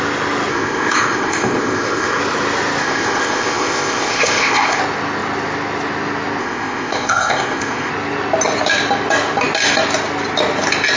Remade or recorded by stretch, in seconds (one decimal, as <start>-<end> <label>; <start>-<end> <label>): 0.0-0.5 recorded; 0.5-2.2 remade; 2.2-2.8 recorded; 2.8-4.8 remade; 4.8-6.4 recorded; 6.4-7.9 remade; 7.9-11.0 recorded